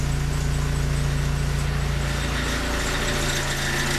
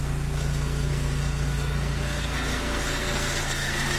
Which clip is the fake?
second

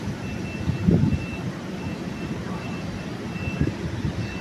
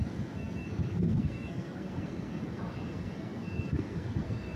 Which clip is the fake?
second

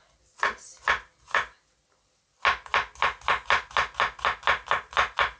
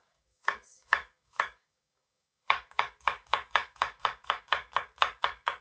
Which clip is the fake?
second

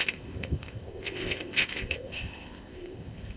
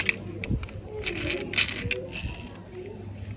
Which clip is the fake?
first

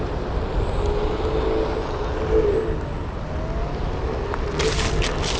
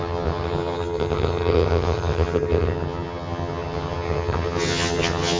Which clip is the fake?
second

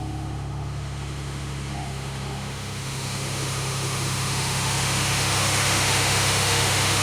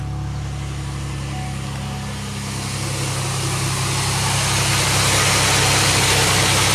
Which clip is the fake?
first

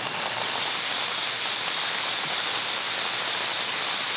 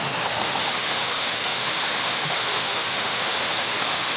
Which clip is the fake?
second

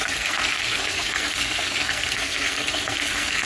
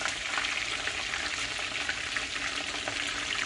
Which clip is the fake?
first